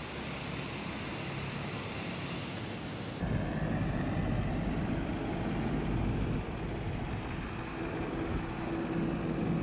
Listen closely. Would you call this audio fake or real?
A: real